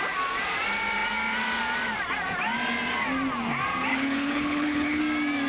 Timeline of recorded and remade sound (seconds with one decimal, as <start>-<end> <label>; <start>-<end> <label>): 0.0-3.9 recorded; 3.9-5.0 remade; 5.0-5.5 recorded